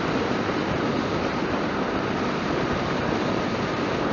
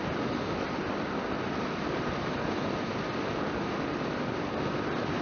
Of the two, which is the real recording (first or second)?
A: second